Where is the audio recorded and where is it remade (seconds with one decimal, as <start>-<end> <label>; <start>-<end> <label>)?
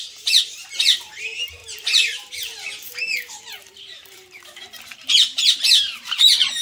0.0-6.6 remade